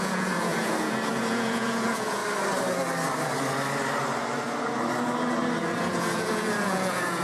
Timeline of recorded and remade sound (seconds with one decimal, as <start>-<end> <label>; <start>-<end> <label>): 0.0-2.2 remade; 2.2-5.8 recorded; 5.8-7.2 remade